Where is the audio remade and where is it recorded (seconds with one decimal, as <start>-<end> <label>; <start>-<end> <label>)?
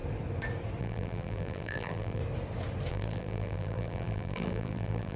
0.0-0.8 recorded; 0.8-2.2 remade; 2.2-2.9 recorded; 2.9-5.2 remade